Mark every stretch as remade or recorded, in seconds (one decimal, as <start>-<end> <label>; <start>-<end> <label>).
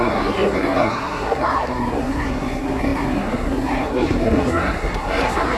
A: 0.0-5.6 remade